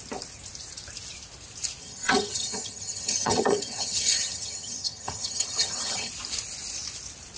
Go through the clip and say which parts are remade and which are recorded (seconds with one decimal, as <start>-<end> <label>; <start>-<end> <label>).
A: 0.0-1.8 recorded; 1.8-6.1 remade; 6.1-7.4 recorded